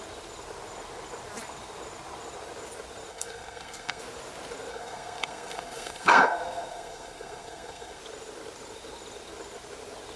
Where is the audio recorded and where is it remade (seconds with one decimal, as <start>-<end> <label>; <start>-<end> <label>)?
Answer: 0.0-3.1 recorded; 3.1-4.0 remade; 4.0-4.7 recorded; 4.7-8.0 remade; 8.0-10.2 recorded